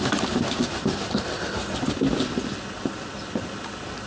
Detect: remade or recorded recorded